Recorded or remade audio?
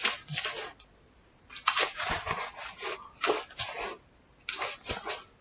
recorded